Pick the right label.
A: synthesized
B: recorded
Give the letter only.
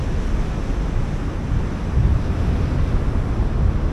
B